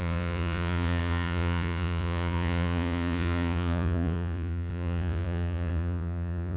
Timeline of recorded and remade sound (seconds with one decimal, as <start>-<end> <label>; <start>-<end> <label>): 0.0-6.6 remade

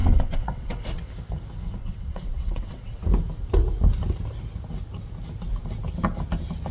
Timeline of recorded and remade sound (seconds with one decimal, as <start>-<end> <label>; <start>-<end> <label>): 0.0-1.1 remade; 1.1-1.8 recorded; 1.8-3.0 remade; 3.0-6.7 recorded

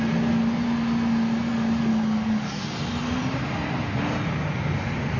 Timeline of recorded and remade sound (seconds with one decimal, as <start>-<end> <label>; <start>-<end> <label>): 0.0-1.9 recorded; 1.9-2.6 remade; 2.6-5.2 recorded

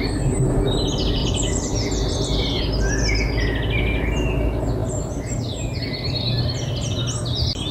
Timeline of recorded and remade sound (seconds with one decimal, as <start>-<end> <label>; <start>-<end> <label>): 0.0-1.2 recorded; 1.2-2.6 remade; 2.6-7.7 recorded